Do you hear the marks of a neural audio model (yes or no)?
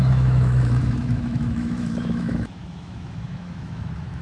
yes